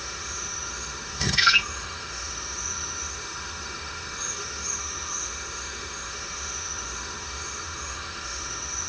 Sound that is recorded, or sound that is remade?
remade